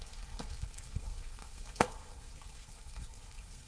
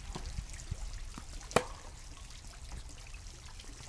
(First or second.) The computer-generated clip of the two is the first